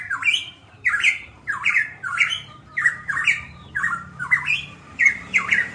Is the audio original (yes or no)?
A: no